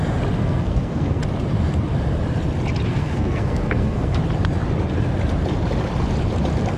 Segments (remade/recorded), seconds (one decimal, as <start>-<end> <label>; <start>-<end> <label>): 0.0-0.4 recorded; 0.4-1.2 remade; 1.2-2.9 recorded; 2.9-4.2 remade; 4.2-6.8 recorded